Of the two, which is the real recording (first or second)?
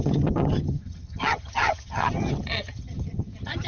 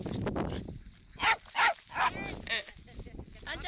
second